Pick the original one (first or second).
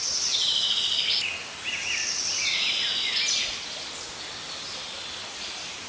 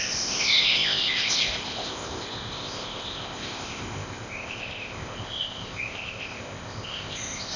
first